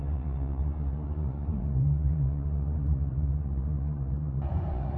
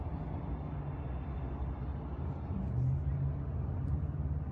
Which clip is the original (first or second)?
second